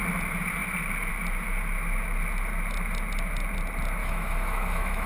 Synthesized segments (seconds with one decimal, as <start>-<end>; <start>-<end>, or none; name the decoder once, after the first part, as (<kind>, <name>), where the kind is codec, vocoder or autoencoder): 4.0-5.1 (autoencoder, DAC-VAE)